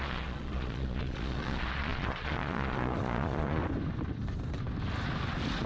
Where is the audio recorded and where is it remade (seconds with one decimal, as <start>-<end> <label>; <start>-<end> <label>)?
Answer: 0.0-3.6 remade; 3.6-5.7 recorded